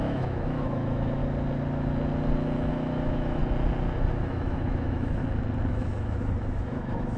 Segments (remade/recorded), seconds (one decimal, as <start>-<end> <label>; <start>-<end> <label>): 0.0-1.2 remade; 1.2-2.7 recorded; 2.7-3.4 remade; 3.4-4.1 recorded; 4.1-5.2 remade; 5.2-5.7 recorded; 5.7-7.2 remade